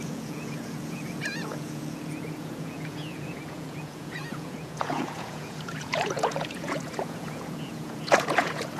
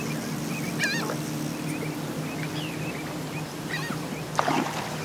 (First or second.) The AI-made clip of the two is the first